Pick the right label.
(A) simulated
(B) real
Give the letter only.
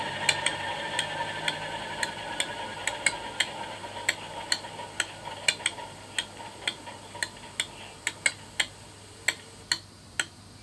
B